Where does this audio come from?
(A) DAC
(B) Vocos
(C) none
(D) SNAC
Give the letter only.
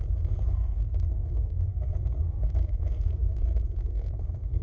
D